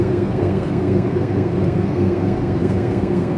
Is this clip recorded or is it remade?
remade